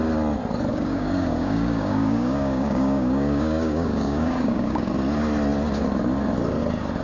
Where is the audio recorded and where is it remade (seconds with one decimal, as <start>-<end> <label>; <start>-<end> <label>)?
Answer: 0.0-0.7 recorded; 0.7-4.9 remade; 4.9-7.0 recorded

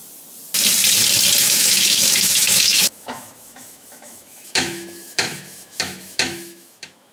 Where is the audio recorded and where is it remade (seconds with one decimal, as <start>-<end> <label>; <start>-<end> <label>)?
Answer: 0.0-1.4 recorded; 1.4-7.1 remade